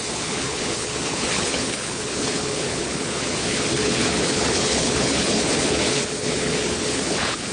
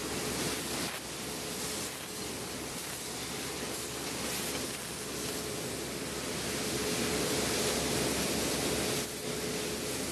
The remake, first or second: first